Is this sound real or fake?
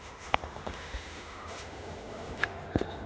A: fake